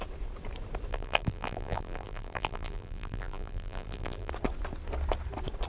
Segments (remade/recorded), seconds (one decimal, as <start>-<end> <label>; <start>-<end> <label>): 0.0-0.9 recorded; 0.9-4.3 remade; 4.3-5.7 recorded